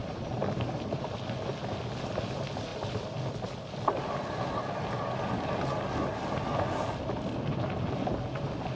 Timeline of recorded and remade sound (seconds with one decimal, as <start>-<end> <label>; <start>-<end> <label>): 0.0-8.8 recorded

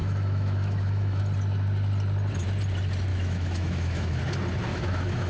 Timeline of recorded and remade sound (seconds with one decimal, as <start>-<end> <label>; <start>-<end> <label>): 0.0-1.2 remade; 1.2-3.1 recorded; 3.1-4.2 remade; 4.2-4.7 recorded; 4.7-5.3 remade

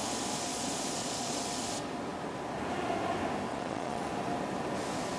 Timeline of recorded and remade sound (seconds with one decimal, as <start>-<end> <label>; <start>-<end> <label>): 0.0-0.5 recorded; 0.5-1.4 remade; 1.4-3.5 recorded; 3.5-4.1 remade; 4.1-5.2 recorded

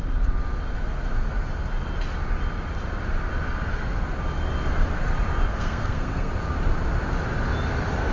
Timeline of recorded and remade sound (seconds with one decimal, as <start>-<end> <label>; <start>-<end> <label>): 0.0-5.5 recorded; 5.5-6.3 remade; 6.3-8.1 recorded

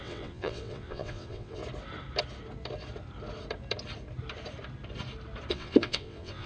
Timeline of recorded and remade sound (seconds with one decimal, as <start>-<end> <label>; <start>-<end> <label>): 0.0-1.6 remade; 1.6-5.5 recorded; 5.5-6.5 remade